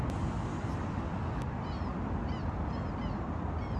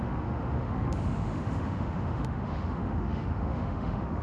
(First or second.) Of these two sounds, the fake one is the second